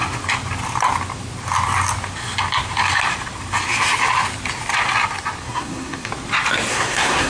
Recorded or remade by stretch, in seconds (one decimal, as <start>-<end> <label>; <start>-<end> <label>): 0.0-5.4 recorded; 5.4-6.1 remade; 6.1-6.7 recorded; 6.7-7.3 remade